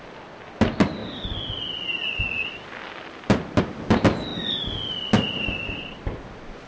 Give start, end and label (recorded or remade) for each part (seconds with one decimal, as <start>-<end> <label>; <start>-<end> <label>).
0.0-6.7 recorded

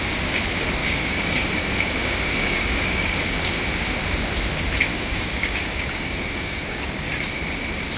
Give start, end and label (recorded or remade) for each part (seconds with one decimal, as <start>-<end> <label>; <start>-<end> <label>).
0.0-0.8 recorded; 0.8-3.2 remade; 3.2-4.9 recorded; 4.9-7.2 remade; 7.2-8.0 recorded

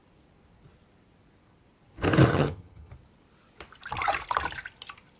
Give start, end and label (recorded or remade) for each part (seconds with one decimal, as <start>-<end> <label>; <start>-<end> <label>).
0.0-2.3 recorded; 2.3-2.9 remade; 2.9-5.2 recorded